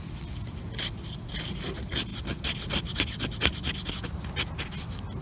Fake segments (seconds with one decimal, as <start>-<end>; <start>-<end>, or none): none